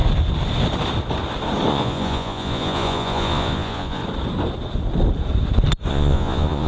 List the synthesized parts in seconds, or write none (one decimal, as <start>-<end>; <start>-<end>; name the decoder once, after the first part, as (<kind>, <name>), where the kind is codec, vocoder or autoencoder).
1.7-4.0 (vocoder, Vocos); 5.9-6.7